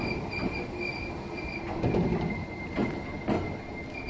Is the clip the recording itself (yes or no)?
yes